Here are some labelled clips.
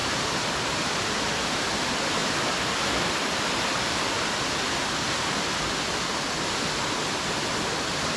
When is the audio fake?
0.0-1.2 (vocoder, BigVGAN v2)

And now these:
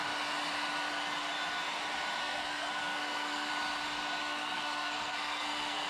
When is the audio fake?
2.2-3.5 (codec, SNAC); 4.2-5.9

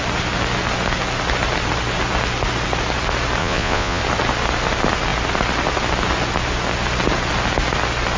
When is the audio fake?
3.4-4.0 (vocoder, Vocos)

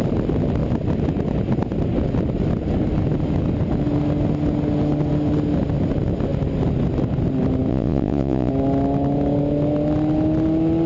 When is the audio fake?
7.7-8.5 (vocoder, Vocos)

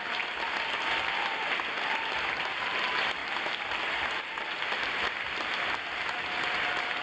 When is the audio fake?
none

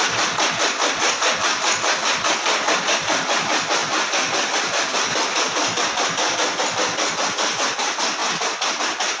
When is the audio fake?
none